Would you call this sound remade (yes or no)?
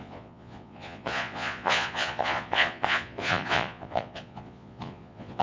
yes